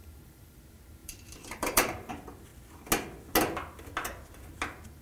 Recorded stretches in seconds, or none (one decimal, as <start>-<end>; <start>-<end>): 0.6-1.0; 2.1-5.0